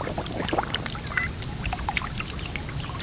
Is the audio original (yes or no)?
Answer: yes